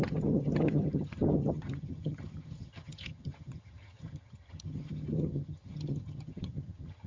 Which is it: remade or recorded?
remade